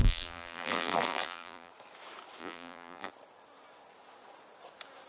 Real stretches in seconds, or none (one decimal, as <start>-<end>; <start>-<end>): 1.7-2.4; 3.1-5.1